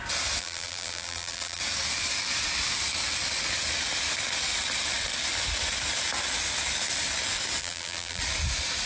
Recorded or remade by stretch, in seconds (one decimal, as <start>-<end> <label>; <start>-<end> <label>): 0.0-0.4 recorded; 0.4-1.6 remade; 1.6-7.6 recorded; 7.6-8.2 remade; 8.2-8.9 recorded